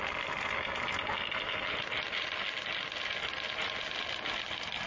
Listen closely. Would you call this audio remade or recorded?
recorded